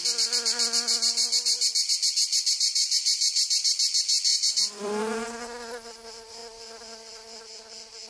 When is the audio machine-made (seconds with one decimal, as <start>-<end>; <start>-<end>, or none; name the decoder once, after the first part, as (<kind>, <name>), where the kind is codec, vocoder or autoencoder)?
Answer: 2.5-3.7 (vocoder, BigVGAN v2); 4.3-5.0